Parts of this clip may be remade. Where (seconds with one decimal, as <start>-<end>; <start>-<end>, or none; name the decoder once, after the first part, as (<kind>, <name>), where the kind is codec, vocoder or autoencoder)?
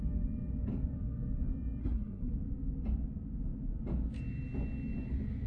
1.8-2.3 (codec, SNAC)